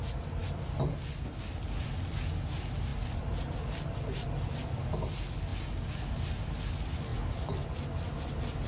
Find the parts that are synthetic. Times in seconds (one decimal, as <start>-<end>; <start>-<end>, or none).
none